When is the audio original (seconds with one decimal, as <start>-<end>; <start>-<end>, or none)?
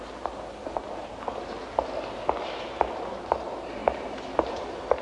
none